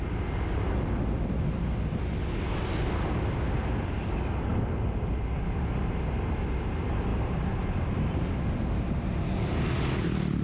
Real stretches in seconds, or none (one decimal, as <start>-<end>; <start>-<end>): 0.0-10.4